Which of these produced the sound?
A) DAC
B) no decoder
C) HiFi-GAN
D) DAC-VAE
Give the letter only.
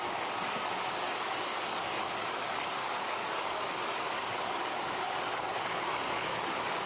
A